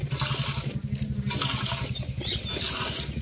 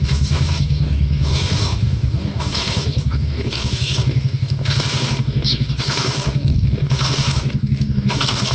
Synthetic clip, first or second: second